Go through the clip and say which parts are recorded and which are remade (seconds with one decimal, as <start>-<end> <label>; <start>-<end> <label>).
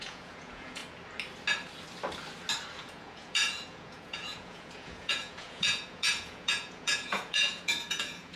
0.0-0.8 remade; 0.8-2.8 recorded; 2.8-8.4 remade